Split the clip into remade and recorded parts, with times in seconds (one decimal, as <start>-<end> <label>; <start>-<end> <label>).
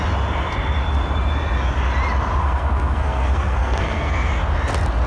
0.0-2.4 recorded; 2.4-4.3 remade; 4.3-5.1 recorded